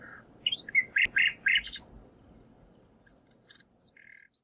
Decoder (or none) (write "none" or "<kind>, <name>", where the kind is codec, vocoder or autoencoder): none